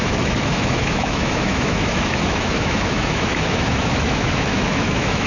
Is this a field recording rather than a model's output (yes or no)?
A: no